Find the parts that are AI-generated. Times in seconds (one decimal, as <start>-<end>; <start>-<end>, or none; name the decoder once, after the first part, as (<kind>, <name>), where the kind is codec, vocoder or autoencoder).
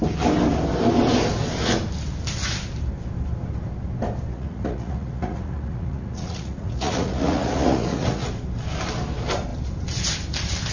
4.3-8.3 (vocoder, Vocos)